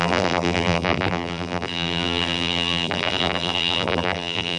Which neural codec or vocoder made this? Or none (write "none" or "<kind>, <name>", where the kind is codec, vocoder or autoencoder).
vocoder, BigVGAN v2